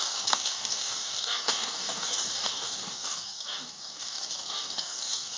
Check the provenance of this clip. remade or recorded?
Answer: remade